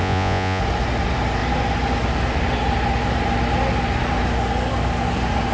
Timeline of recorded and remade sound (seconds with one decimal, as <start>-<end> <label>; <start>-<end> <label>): 0.0-0.6 remade; 0.6-5.5 recorded